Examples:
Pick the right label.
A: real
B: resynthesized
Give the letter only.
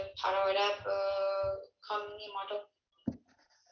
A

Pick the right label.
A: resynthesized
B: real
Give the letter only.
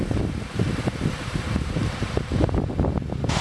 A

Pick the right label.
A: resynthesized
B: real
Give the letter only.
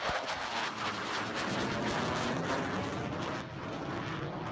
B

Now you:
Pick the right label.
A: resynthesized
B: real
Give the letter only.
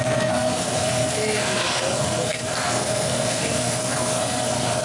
A